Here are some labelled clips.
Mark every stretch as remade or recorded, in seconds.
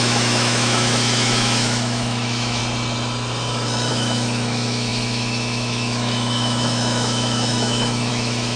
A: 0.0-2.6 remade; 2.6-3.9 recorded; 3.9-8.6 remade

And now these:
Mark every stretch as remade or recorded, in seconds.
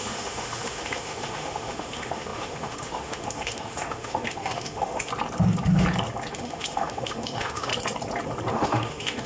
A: 0.0-5.1 remade; 5.1-6.3 recorded; 6.3-7.7 remade; 7.7-8.5 recorded; 8.5-9.3 remade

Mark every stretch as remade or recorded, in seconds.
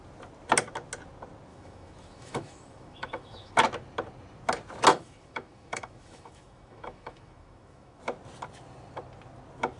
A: 0.0-1.5 recorded; 1.5-3.5 remade; 3.5-4.9 recorded; 4.9-8.0 remade; 8.0-9.8 recorded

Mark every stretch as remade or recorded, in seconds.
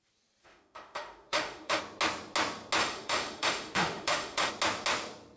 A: 0.0-0.4 recorded; 0.4-1.8 remade; 1.8-2.8 recorded; 2.8-4.5 remade; 4.5-5.4 recorded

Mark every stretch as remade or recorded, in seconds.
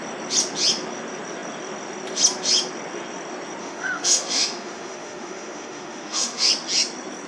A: 0.0-3.6 recorded; 3.6-6.5 remade; 6.5-7.3 recorded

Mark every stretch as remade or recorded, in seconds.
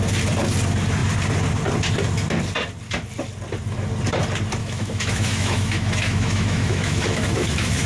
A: 0.0-4.6 recorded; 4.6-7.9 remade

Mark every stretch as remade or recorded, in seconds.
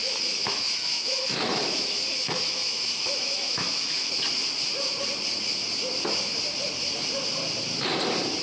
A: 0.0-4.1 remade; 4.1-8.4 recorded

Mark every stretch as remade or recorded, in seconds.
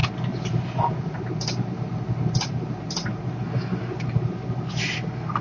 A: 0.0-5.4 recorded